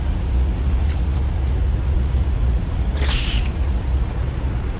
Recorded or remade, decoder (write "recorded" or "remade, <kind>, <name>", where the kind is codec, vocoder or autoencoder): remade, vocoder, Vocos